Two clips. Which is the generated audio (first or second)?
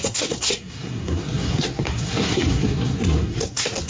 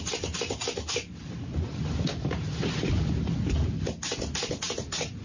first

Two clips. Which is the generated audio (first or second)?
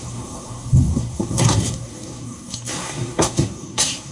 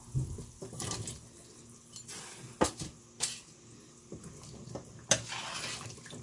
first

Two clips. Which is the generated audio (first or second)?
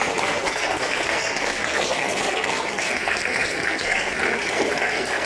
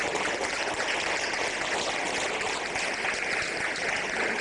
first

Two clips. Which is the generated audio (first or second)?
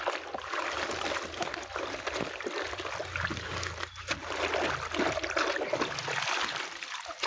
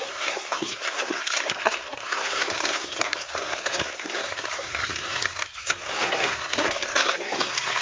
second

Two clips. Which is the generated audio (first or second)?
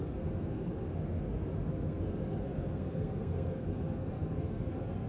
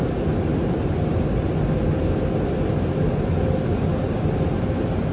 first